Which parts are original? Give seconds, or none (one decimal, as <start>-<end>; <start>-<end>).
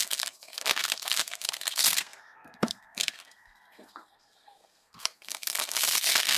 none